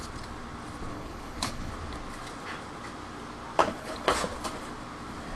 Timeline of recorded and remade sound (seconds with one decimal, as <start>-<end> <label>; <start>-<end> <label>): 0.0-0.9 recorded; 0.9-1.7 remade; 1.7-3.6 recorded; 3.6-4.1 remade; 4.1-5.3 recorded

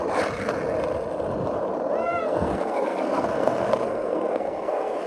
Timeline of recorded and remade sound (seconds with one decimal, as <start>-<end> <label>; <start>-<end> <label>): 0.0-2.0 recorded; 2.0-5.1 remade

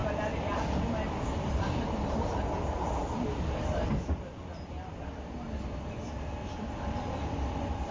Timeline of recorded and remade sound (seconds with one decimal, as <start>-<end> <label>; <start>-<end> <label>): 0.0-7.9 recorded

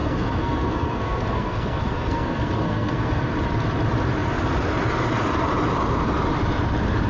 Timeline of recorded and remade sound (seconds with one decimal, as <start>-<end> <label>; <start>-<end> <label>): 0.0-3.2 remade; 3.2-7.1 recorded

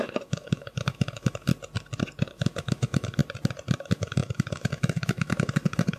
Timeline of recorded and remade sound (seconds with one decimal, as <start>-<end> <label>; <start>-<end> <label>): 0.0-1.5 remade; 1.5-2.2 recorded; 2.2-3.2 remade; 3.2-3.8 recorded; 3.8-6.0 remade

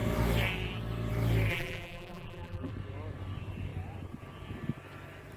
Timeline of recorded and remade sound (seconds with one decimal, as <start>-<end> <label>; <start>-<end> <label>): 0.0-1.5 recorded; 1.5-2.7 remade; 2.7-5.4 recorded

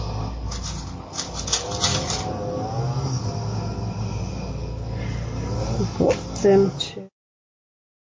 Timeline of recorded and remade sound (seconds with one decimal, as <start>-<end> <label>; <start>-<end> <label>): 0.0-8.1 recorded